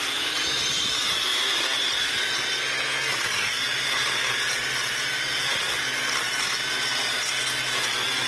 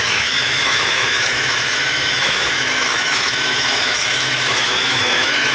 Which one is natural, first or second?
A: first